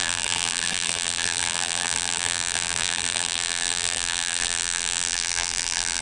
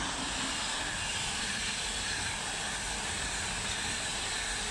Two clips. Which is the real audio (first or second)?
second